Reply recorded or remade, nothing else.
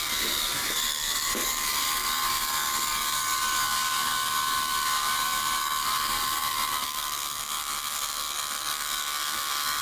remade